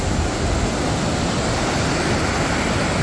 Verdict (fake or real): real